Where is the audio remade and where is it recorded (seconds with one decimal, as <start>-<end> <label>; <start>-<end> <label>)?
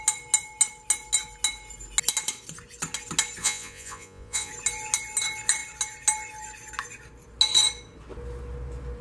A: 0.0-3.4 recorded; 3.4-4.5 remade; 4.5-9.0 recorded